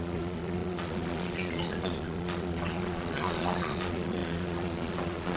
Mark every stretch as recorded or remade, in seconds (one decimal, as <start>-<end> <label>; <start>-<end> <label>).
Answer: 0.0-5.4 remade